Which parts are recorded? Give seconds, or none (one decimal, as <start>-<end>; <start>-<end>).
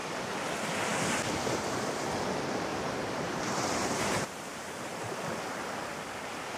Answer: 0.0-2.7; 5.1-6.6